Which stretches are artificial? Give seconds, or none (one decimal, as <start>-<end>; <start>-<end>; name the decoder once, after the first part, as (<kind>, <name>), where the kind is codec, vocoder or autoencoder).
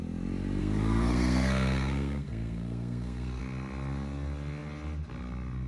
0.6-3.4 (codec, SNAC)